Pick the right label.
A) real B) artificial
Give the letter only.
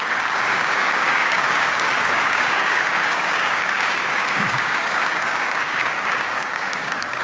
B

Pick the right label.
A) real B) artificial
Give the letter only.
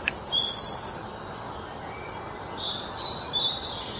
A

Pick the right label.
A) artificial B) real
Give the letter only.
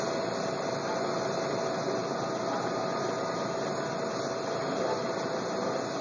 B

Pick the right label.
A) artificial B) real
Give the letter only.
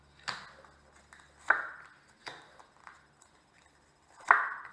B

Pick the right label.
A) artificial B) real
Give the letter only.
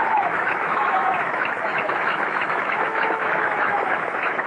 A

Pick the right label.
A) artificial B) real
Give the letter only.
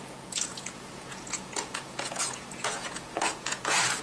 A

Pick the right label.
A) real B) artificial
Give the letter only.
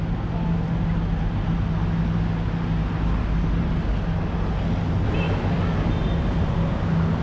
A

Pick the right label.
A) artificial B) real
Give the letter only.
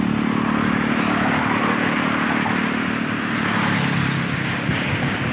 B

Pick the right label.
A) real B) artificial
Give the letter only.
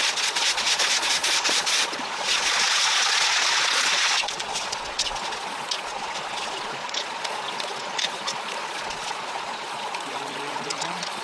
B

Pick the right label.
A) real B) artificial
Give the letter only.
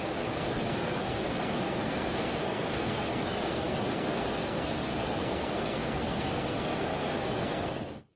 B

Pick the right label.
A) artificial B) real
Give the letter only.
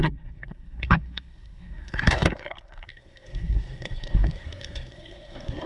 A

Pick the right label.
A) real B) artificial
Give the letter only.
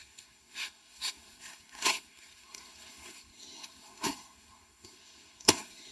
B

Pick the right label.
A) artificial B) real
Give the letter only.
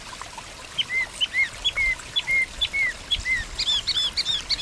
B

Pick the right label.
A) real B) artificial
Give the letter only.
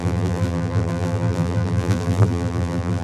B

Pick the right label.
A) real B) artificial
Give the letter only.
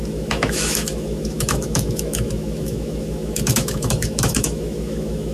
B